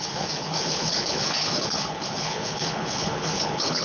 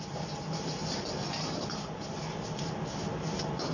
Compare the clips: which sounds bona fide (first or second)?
second